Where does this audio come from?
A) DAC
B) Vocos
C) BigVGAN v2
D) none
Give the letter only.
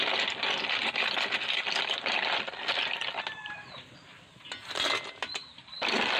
D